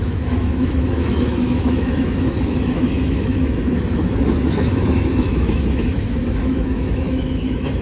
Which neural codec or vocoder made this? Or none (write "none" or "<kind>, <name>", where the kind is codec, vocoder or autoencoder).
autoencoder, DAC-VAE